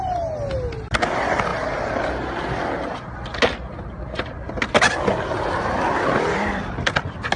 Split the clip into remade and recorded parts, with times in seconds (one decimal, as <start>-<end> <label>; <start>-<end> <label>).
0.0-7.4 recorded